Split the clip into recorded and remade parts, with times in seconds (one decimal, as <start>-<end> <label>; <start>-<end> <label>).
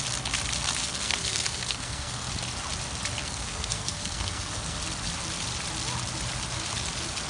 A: 0.0-0.8 recorded; 0.8-2.3 remade; 2.3-3.2 recorded; 3.2-4.8 remade; 4.8-7.3 recorded